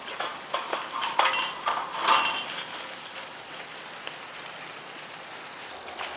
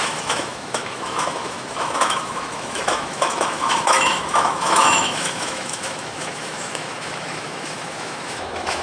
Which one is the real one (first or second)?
first